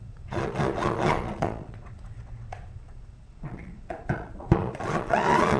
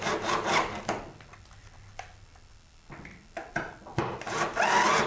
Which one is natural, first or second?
second